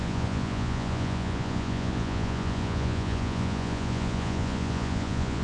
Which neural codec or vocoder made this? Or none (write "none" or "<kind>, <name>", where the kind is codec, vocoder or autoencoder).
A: vocoder, Vocos